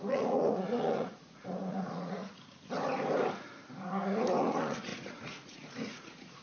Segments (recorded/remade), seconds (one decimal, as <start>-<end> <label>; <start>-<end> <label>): 0.0-2.2 remade; 2.2-4.4 recorded; 4.4-6.4 remade